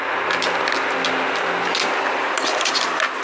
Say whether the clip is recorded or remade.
recorded